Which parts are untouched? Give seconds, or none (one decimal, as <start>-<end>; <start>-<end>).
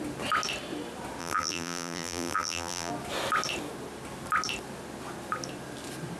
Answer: 0.0-1.2; 2.9-6.2